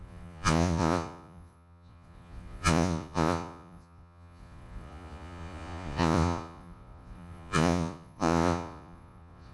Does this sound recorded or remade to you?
remade